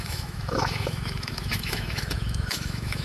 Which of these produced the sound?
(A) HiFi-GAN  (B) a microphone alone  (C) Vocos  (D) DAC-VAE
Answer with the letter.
D